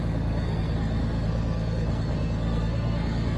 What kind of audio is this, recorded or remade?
remade